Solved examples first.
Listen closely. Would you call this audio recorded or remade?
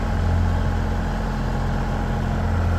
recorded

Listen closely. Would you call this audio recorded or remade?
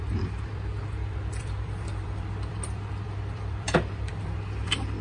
remade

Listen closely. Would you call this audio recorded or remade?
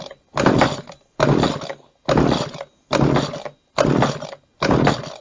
recorded